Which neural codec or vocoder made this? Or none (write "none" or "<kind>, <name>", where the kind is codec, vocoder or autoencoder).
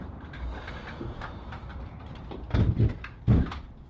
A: vocoder, BigVGAN v2